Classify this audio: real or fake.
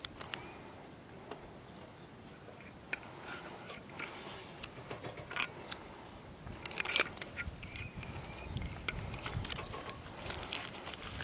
real